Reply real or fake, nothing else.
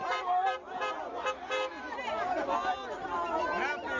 real